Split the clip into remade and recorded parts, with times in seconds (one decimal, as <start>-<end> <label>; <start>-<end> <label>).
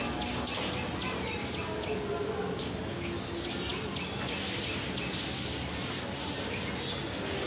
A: 0.0-7.5 recorded